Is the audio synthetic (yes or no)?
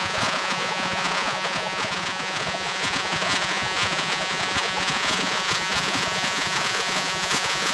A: yes